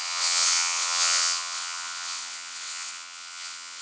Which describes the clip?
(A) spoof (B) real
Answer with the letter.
A